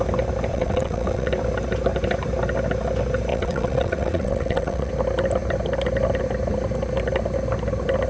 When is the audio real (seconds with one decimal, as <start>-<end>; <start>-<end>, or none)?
0.0-0.5; 1.3-3.3; 4.9-8.1